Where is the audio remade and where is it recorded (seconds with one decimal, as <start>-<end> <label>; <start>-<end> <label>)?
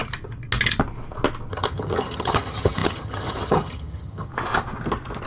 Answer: 0.0-1.5 recorded; 1.5-4.3 remade; 4.3-5.3 recorded